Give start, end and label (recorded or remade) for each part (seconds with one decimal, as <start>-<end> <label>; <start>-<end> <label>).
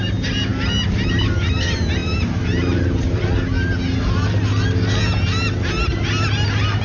0.0-2.0 recorded; 2.0-3.2 remade; 3.2-6.8 recorded